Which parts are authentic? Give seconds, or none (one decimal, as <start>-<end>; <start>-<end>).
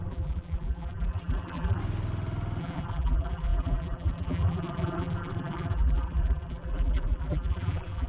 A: 1.8-2.6